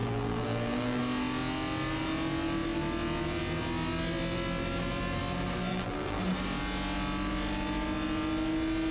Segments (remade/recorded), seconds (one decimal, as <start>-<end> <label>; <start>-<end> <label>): 0.0-1.0 remade; 1.0-5.7 recorded; 5.7-6.2 remade; 6.2-8.9 recorded